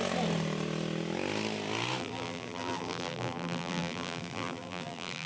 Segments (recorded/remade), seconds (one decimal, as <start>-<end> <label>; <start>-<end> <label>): 0.0-2.0 recorded; 2.0-5.3 remade